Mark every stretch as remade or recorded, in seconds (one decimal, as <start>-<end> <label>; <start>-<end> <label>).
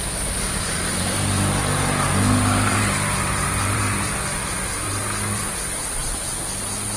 0.0-6.0 remade; 6.0-7.0 recorded